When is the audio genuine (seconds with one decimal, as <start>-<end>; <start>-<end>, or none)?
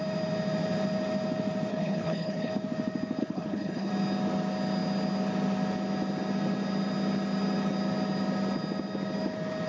0.0-1.7; 2.5-3.2; 3.9-9.7